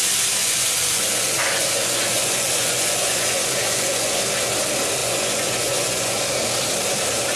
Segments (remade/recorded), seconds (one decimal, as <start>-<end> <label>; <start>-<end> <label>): 0.0-0.4 recorded; 0.4-4.2 remade; 4.2-5.0 recorded; 5.0-6.2 remade; 6.2-7.4 recorded